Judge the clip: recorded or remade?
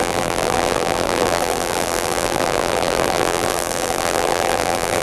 remade